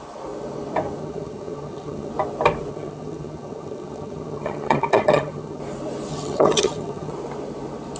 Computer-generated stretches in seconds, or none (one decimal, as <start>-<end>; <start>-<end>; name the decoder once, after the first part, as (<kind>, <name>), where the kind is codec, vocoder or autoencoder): 1.0-2.1 (vocoder, HiFi-GAN); 2.7-5.6; 6.1-7.1